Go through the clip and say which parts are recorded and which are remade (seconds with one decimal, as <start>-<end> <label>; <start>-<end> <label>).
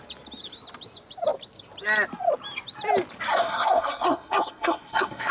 0.0-3.3 recorded; 3.3-5.3 remade